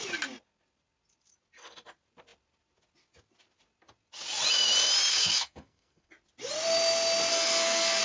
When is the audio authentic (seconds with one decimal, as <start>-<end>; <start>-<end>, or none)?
0.0-5.1; 6.1-7.3